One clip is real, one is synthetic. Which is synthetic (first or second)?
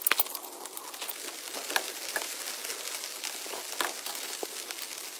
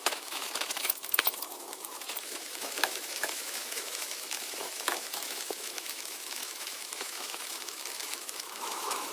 second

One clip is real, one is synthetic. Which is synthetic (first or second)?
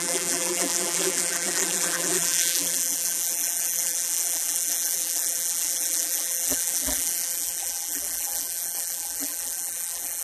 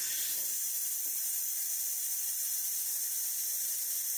first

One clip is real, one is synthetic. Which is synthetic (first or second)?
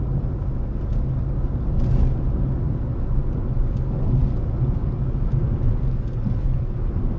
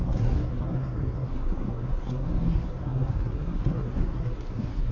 second